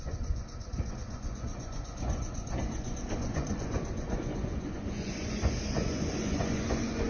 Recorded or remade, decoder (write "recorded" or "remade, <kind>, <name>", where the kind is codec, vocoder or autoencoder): remade, vocoder, Vocos